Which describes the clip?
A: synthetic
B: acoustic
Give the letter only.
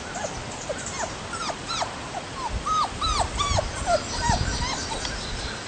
B